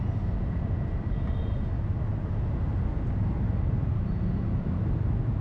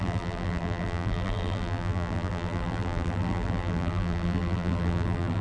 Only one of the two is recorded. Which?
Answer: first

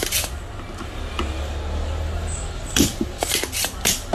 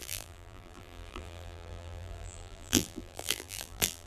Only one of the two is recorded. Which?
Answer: first